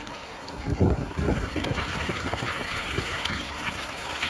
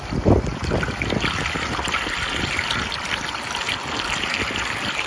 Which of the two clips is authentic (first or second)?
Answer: second